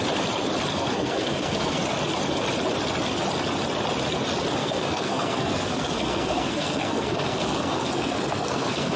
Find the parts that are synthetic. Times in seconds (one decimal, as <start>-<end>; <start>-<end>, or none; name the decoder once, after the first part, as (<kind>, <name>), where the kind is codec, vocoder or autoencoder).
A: 0.7-1.8 (codec, SNAC); 4.6-9.0